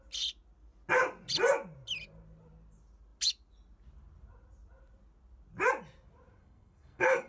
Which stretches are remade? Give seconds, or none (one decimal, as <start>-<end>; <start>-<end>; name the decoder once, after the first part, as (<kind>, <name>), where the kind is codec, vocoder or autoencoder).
6.4-7.3 (codec, SNAC)